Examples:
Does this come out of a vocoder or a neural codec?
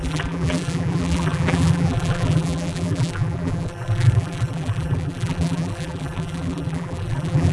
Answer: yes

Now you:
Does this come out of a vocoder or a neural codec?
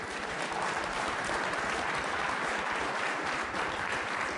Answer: yes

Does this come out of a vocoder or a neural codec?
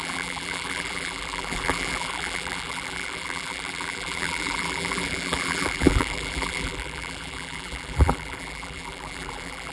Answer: yes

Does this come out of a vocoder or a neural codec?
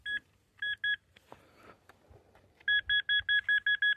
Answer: no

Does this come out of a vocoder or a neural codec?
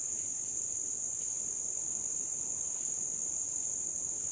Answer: no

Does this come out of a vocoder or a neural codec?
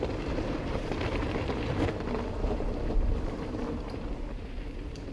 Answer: yes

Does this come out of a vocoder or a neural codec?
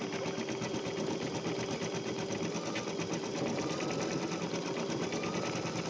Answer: no